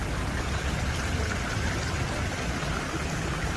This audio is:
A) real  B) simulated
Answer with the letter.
A